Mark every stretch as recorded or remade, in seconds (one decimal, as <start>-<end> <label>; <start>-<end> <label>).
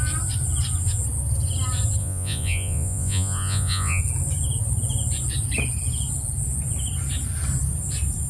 0.0-2.0 recorded; 2.0-4.0 remade; 4.0-8.3 recorded